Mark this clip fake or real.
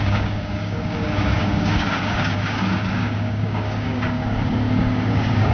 fake